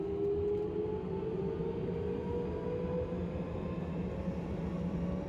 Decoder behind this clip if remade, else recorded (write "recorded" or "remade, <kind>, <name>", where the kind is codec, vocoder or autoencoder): recorded